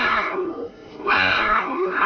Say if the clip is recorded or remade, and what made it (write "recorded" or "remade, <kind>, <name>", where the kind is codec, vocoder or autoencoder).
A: remade, codec, SNAC